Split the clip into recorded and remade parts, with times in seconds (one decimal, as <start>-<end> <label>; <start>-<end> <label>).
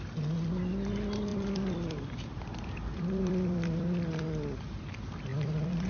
0.0-1.3 recorded; 1.3-4.8 remade; 4.8-5.3 recorded; 5.3-5.9 remade